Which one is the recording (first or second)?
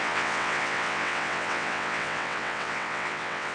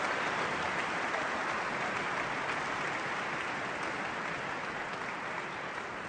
second